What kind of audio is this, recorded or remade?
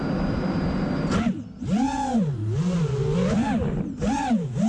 recorded